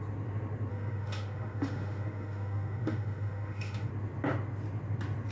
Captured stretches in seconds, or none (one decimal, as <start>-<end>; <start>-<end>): 0.0-0.7; 3.9-5.3